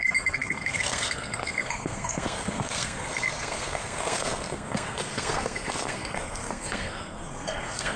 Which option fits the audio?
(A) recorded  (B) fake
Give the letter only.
B